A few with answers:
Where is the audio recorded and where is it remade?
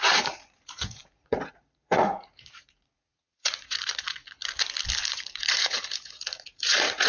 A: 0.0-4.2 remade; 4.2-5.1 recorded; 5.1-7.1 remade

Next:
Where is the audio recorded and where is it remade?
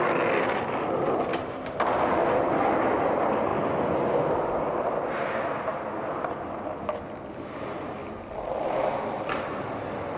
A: 0.0-10.2 recorded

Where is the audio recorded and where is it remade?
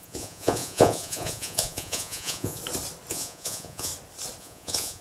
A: 0.0-2.6 remade; 2.6-3.1 recorded; 3.1-3.9 remade; 3.9-4.4 recorded; 4.4-5.0 remade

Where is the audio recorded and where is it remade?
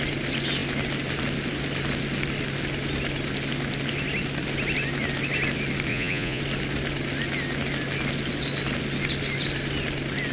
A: 0.0-5.9 recorded; 5.9-6.4 remade; 6.4-10.3 recorded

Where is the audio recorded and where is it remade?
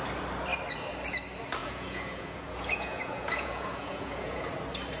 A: 0.0-1.6 recorded; 1.6-4.5 remade; 4.5-5.0 recorded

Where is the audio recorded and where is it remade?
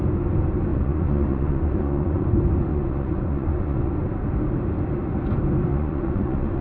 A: 0.0-0.7 recorded; 0.7-2.2 remade; 2.2-2.7 recorded; 2.7-3.9 remade; 3.9-5.7 recorded; 5.7-6.6 remade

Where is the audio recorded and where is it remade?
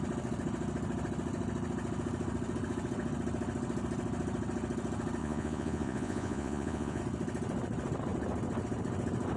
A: 0.0-5.2 recorded; 5.2-7.0 remade; 7.0-9.4 recorded